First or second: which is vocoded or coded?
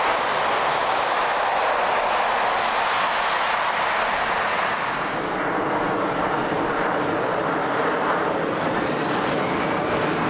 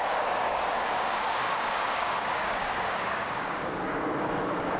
second